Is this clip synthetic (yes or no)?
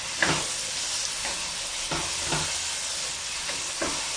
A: no